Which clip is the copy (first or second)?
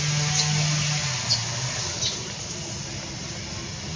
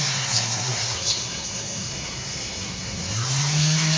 second